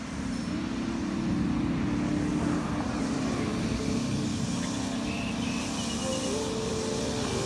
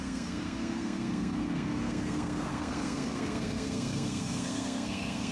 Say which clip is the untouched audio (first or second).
first